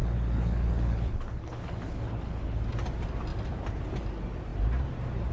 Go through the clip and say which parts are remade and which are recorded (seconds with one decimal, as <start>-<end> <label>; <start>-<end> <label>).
0.0-2.6 remade; 2.6-5.3 recorded